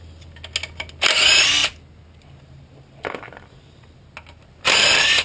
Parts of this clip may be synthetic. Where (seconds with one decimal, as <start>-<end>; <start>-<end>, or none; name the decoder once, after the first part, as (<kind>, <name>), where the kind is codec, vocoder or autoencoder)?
none